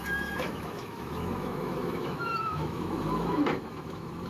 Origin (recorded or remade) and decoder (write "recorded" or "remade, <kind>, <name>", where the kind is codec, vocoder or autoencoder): remade, autoencoder, DAC-VAE